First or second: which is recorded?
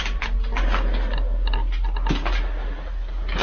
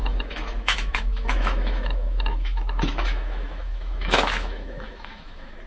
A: first